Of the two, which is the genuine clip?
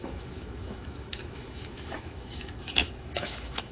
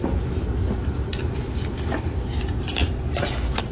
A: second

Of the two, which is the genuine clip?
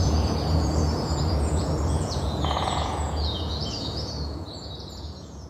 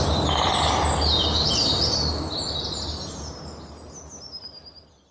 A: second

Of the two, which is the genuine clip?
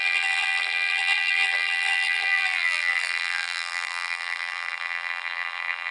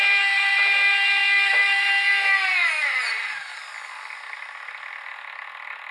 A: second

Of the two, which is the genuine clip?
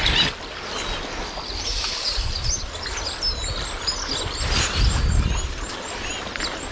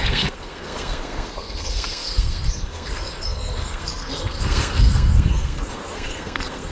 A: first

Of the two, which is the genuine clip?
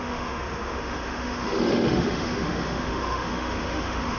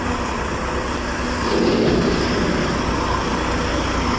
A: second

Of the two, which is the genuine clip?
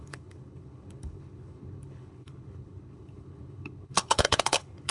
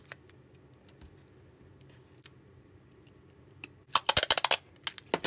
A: second